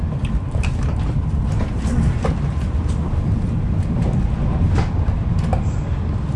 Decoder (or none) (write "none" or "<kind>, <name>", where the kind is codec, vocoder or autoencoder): none